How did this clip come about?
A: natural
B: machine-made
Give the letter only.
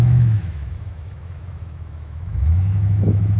B